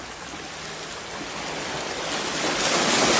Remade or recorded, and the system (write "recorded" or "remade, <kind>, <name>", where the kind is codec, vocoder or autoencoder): recorded